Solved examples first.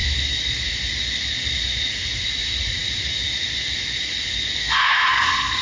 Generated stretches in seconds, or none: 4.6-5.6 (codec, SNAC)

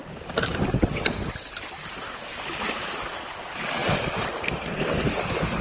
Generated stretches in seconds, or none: 0.0-3.4 (vocoder, BigVGAN v2)

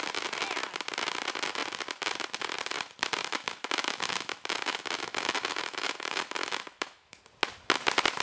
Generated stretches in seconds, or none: 3.2-7.2 (autoencoder, DAC-VAE)

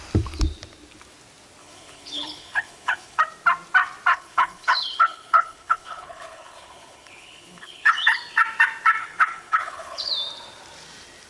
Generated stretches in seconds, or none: 1.6-3.2 (codec, HILCodec); 4.1-8.2; 9.0-10.1

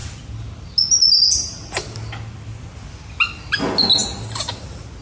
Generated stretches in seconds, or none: none

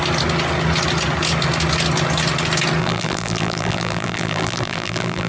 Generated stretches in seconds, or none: 2.8-5.3 (vocoder, BigVGAN v2)

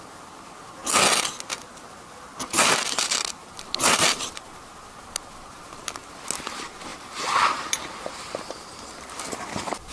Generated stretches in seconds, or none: none

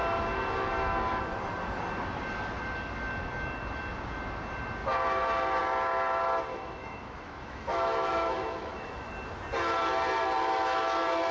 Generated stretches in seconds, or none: 6.5-9.1 (autoencoder, DAC-VAE)